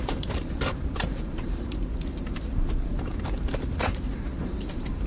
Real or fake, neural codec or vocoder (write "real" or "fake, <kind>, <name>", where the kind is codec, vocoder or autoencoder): fake, vocoder, BigVGAN v2